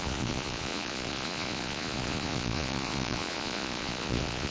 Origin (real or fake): fake